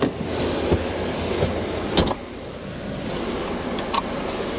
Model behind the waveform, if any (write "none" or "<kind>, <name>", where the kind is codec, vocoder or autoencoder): none